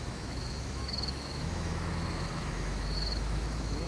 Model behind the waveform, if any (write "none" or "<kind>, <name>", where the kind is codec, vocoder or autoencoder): autoencoder, DAC-VAE